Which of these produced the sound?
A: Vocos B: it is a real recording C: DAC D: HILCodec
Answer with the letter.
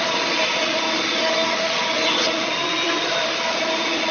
B